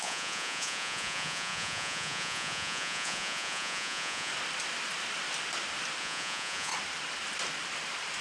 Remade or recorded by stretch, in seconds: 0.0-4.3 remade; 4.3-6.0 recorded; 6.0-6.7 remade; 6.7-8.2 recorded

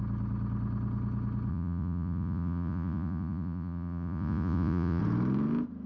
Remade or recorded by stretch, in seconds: 0.0-1.5 recorded; 1.5-5.0 remade; 5.0-5.9 recorded

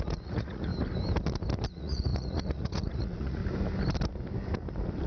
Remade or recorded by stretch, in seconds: 0.0-0.7 remade; 0.7-1.7 recorded; 1.7-3.4 remade; 3.4-5.1 recorded

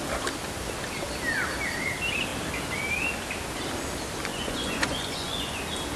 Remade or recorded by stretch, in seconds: 0.0-4.3 recorded; 4.3-5.6 remade; 5.6-6.0 recorded

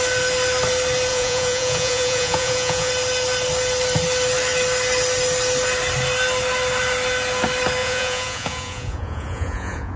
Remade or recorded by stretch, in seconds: 0.0-1.1 recorded; 1.1-2.9 remade; 2.9-7.8 recorded; 7.8-10.0 remade

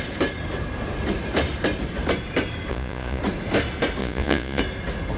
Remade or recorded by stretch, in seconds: 0.0-2.7 recorded; 2.7-3.2 remade; 3.2-4.0 recorded; 4.0-4.6 remade; 4.6-5.2 recorded

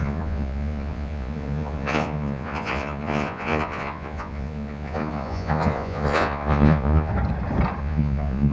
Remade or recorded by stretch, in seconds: 0.0-7.1 remade; 7.1-7.8 recorded; 7.8-8.5 remade

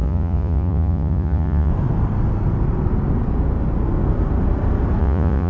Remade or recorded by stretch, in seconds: 0.0-1.7 remade; 1.7-5.0 recorded; 5.0-5.5 remade